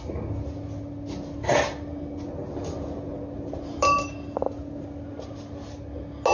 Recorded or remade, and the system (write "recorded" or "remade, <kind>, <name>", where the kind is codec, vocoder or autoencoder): recorded